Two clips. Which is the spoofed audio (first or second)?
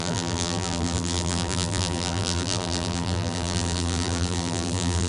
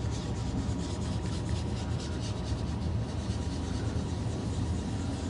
first